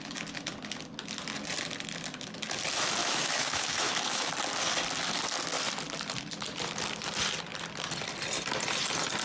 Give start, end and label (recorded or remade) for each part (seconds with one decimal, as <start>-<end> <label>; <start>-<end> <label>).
0.0-3.0 recorded; 3.0-4.3 remade; 4.3-9.2 recorded